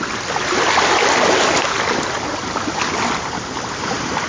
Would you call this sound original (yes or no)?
yes